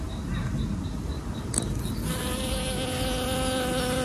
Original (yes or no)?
yes